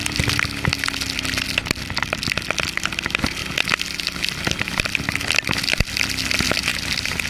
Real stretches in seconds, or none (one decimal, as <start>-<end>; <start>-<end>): 0.0-6.7